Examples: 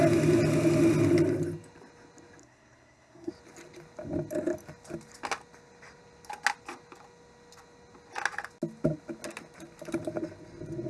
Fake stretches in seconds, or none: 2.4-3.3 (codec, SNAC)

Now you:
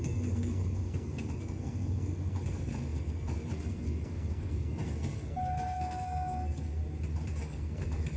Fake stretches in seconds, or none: 0.0-6.8 (codec, SNAC); 7.4-8.2

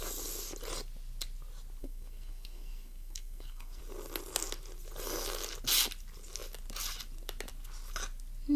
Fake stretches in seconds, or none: 1.8-3.8 (codec, SNAC)